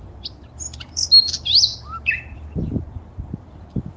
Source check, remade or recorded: recorded